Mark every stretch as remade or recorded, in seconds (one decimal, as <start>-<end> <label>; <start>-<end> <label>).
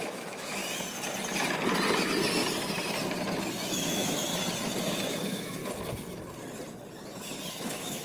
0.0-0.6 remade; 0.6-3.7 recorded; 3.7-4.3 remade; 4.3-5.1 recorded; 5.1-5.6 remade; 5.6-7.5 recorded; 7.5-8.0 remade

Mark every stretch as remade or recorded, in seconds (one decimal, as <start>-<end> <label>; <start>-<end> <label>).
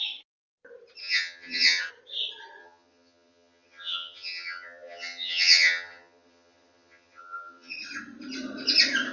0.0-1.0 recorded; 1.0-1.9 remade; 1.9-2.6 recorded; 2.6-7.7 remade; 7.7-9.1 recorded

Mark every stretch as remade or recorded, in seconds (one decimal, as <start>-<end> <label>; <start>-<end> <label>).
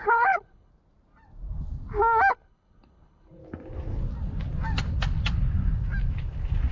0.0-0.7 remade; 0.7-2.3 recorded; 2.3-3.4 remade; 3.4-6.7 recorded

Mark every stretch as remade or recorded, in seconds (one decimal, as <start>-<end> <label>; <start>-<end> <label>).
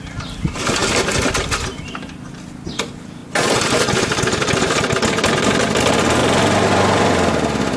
0.0-6.2 recorded; 6.2-7.3 remade; 7.3-7.8 recorded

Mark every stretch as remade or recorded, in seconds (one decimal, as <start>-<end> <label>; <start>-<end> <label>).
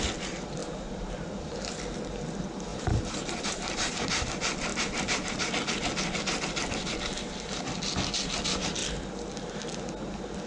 0.0-0.6 recorded; 0.6-1.8 remade; 1.8-2.7 recorded; 2.7-4.3 remade; 4.3-4.7 recorded; 4.7-5.5 remade; 5.5-10.5 recorded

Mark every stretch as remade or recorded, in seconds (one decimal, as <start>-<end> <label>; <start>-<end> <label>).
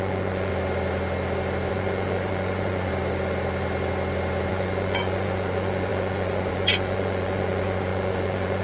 0.0-0.5 remade; 0.5-1.7 recorded; 1.7-2.9 remade; 2.9-4.5 recorded; 4.5-8.6 remade